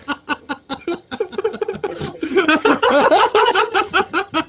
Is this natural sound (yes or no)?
no